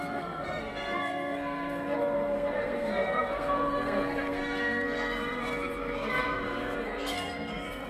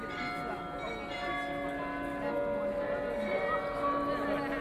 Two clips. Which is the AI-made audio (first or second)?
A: first